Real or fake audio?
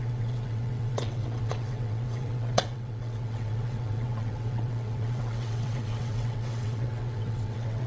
fake